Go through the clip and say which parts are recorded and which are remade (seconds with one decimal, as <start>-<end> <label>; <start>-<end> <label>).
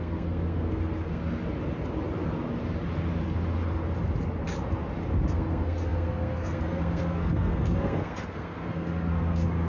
0.0-1.2 remade; 1.2-5.3 recorded; 5.3-9.7 remade